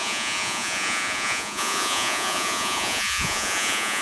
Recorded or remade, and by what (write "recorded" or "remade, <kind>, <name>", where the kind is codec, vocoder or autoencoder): remade, vocoder, Vocos